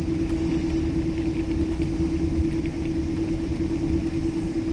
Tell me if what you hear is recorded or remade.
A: recorded